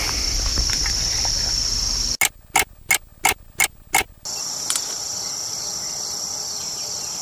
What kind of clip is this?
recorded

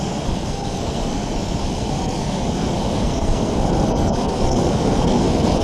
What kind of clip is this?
remade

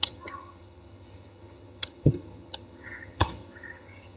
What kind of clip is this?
remade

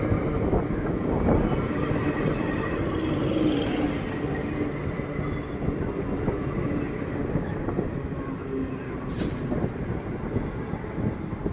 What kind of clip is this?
recorded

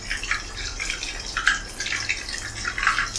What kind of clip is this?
recorded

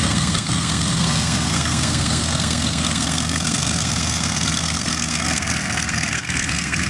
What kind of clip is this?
remade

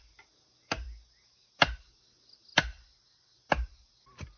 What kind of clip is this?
recorded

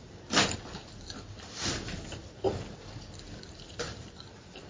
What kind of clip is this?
recorded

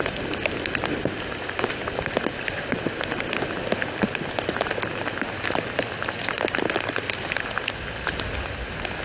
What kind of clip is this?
recorded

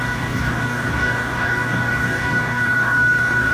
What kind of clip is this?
remade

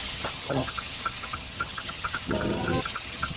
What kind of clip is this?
remade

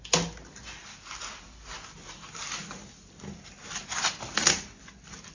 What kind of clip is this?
recorded